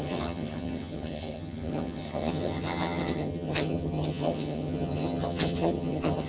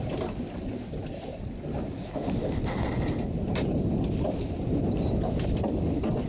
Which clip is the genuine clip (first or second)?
second